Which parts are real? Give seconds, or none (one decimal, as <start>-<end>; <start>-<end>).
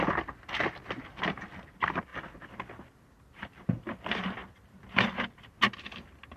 0.0-6.4